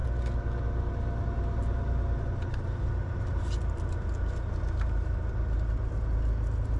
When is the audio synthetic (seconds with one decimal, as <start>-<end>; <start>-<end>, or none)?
none